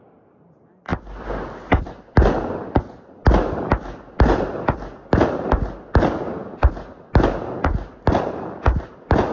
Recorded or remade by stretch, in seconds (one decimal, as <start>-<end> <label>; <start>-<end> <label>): 0.0-9.3 recorded